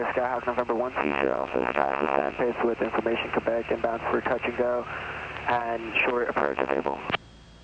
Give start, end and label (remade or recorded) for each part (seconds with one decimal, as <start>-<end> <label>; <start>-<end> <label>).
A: 0.0-1.0 recorded; 1.0-2.4 remade; 2.4-6.4 recorded; 6.4-7.0 remade; 7.0-7.6 recorded